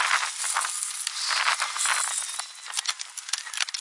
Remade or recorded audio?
recorded